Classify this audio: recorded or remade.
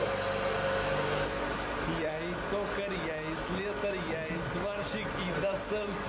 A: recorded